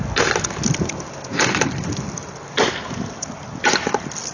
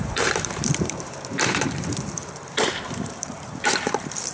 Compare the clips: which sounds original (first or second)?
first